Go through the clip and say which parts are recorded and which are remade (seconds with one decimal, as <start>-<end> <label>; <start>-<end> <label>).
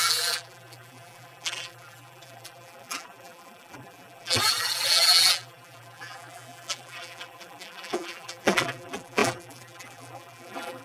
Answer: 0.0-10.8 remade